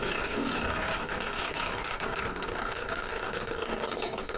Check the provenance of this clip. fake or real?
fake